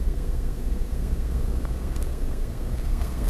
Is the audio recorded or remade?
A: remade